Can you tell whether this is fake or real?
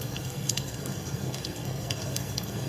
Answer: fake